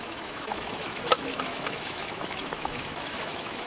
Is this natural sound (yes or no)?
no